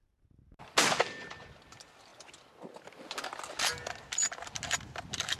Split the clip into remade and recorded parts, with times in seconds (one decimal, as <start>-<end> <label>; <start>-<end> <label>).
0.0-5.4 recorded